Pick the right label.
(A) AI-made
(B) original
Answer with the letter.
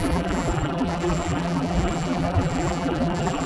A